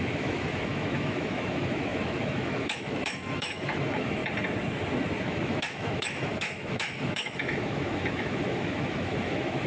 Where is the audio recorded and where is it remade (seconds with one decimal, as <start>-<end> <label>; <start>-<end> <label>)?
0.0-4.2 remade; 4.2-5.2 recorded; 5.2-9.7 remade